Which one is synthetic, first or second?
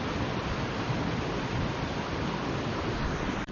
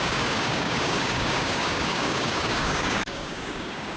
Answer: second